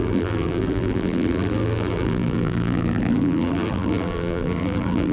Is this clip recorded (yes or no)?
no